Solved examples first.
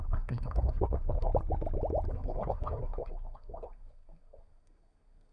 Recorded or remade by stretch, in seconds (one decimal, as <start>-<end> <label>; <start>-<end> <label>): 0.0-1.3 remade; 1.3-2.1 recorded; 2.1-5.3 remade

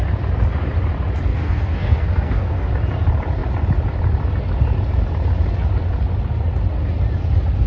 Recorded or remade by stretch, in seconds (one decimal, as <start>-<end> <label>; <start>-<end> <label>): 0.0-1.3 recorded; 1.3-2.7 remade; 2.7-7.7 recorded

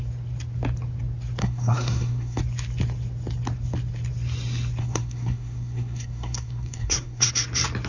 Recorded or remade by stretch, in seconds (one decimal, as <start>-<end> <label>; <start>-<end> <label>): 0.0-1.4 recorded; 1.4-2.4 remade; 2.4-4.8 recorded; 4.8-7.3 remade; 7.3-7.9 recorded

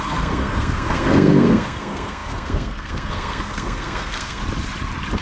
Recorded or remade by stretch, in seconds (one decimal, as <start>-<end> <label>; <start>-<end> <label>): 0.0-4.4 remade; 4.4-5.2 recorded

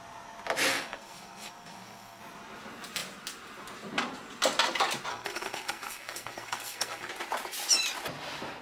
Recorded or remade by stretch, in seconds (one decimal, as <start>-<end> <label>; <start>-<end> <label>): 0.0-0.7 recorded; 0.7-2.2 remade; 2.2-5.1 recorded; 5.1-7.1 remade; 7.1-8.6 recorded